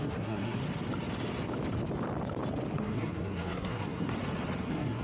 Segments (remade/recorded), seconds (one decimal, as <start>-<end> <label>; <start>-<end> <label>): 0.0-0.6 remade; 0.6-2.7 recorded; 2.7-4.1 remade; 4.1-4.6 recorded; 4.6-5.0 remade